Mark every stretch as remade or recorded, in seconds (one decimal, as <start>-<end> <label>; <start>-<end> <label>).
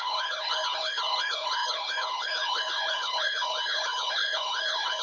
0.0-5.0 remade